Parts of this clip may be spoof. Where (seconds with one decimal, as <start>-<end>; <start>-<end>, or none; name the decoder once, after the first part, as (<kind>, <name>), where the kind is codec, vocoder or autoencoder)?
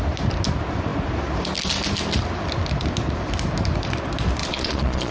4.4-5.1 (vocoder, Vocos)